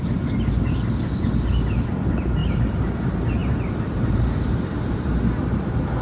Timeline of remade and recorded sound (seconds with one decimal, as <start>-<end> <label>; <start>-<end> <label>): 0.0-2.4 recorded; 2.4-3.0 remade; 3.0-3.4 recorded; 3.4-5.1 remade; 5.1-6.0 recorded